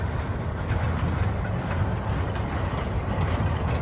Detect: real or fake real